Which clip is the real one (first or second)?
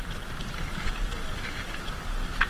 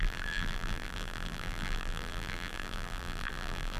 first